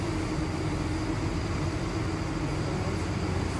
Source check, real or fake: real